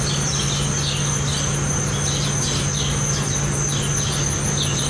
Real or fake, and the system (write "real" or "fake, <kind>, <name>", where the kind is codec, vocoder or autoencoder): real